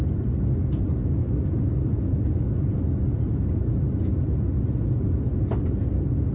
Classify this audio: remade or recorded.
recorded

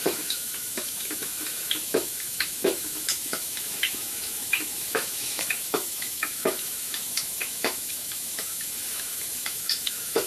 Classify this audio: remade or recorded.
remade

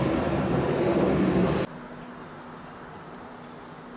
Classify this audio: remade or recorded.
recorded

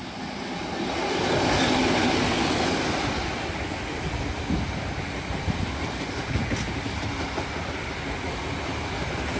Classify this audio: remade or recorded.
recorded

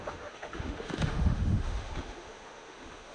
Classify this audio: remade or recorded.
remade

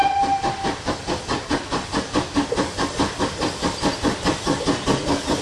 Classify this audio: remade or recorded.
recorded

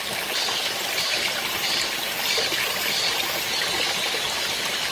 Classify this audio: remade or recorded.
recorded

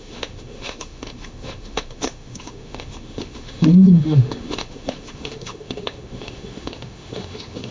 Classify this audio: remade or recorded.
remade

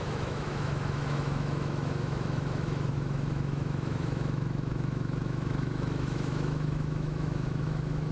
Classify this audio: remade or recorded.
remade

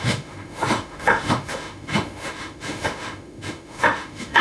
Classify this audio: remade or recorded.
remade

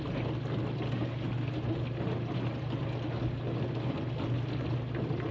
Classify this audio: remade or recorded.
recorded